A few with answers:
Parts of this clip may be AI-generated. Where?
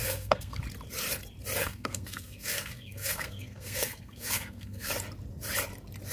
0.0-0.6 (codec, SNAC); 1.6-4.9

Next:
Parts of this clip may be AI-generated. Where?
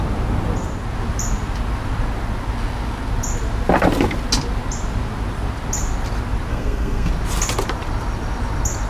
6.5-7.1 (codec, SNAC)